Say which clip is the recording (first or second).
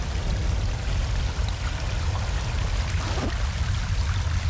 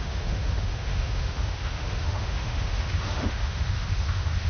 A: first